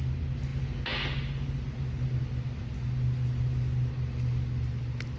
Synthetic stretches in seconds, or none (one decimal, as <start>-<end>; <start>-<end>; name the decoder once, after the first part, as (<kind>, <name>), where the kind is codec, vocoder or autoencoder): none